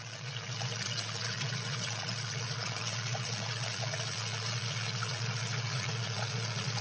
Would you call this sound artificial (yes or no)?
yes